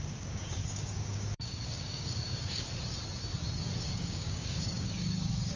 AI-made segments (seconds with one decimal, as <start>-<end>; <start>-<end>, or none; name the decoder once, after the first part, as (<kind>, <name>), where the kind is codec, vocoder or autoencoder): 0.0-2.7 (codec, DAC); 3.8-5.6